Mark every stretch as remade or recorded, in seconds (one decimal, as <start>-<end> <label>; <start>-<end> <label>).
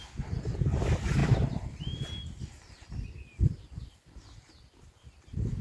0.0-5.6 recorded